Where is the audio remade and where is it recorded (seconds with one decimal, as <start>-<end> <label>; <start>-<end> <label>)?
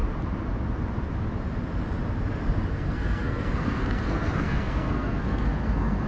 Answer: 0.0-2.7 recorded; 2.7-6.1 remade